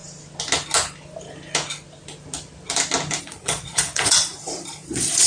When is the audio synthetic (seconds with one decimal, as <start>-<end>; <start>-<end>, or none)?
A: 3.2-5.3